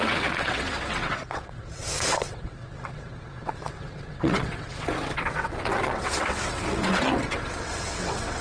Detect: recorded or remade remade